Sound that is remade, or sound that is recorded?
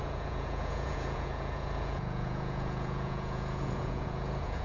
remade